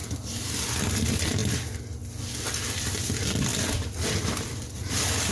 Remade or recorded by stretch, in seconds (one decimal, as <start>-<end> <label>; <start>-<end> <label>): 0.0-0.7 remade; 0.7-5.3 recorded